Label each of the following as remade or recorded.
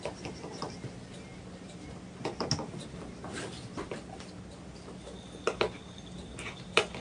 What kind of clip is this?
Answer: recorded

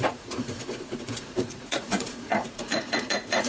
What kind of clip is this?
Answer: remade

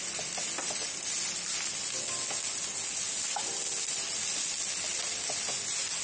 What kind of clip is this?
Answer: recorded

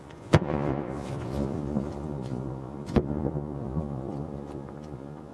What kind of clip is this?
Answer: remade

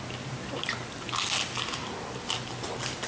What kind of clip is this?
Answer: recorded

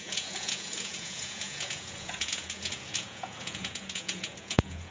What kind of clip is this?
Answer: remade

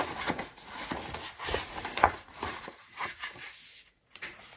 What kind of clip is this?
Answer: remade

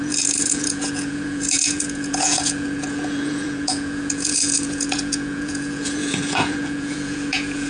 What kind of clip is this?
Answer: remade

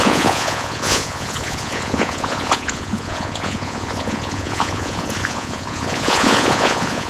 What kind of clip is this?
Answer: remade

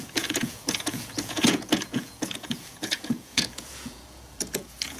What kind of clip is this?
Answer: remade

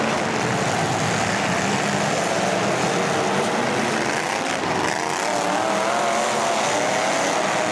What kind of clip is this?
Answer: recorded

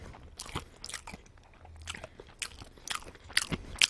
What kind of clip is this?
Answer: recorded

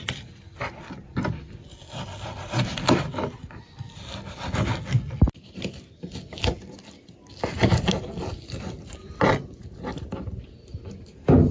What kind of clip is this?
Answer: recorded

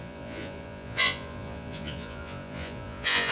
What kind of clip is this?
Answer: remade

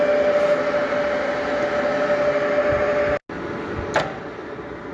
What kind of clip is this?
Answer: recorded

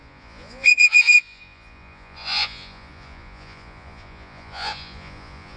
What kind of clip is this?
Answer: remade